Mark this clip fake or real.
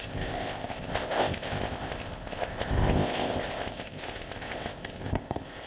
fake